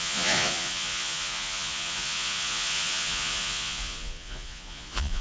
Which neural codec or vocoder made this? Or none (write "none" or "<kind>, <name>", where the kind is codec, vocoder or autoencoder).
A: vocoder, Vocos